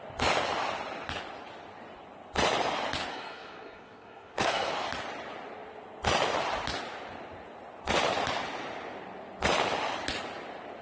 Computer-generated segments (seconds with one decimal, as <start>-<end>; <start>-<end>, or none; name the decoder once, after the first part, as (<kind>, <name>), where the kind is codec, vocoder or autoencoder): 3.1-4.7 (codec, SNAC)